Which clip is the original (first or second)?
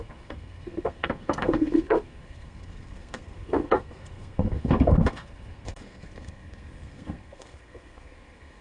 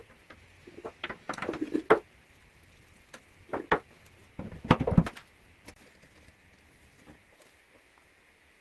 second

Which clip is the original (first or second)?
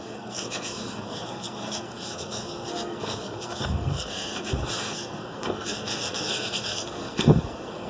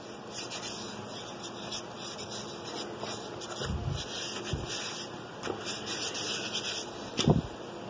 second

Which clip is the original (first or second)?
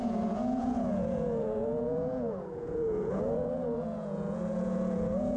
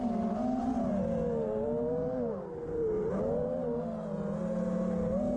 second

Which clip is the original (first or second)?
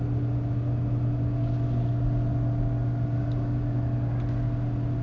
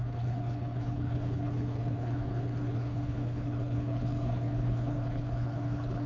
first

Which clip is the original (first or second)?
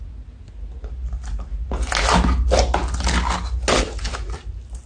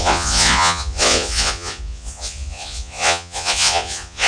first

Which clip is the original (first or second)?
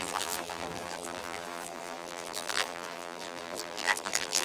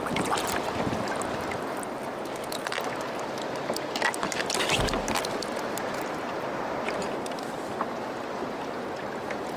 second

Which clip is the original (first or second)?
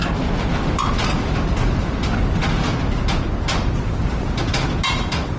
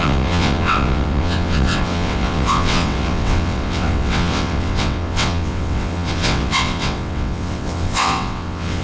first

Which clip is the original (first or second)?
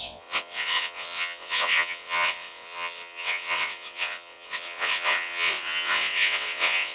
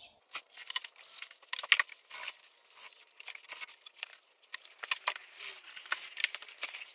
second